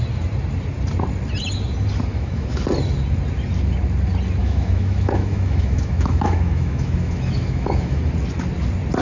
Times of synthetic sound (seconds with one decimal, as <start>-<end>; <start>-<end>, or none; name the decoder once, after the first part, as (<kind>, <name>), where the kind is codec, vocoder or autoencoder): 2.1-2.6 (autoencoder, DAC-VAE); 4.4-8.0